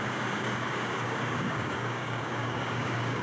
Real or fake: fake